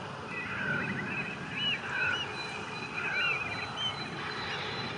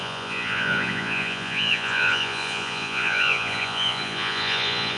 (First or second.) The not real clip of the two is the second